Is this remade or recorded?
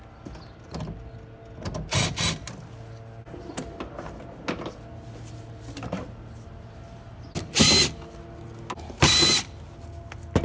recorded